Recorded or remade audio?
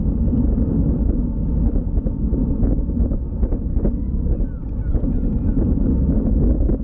recorded